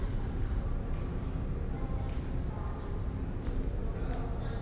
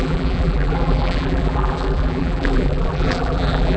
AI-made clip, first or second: second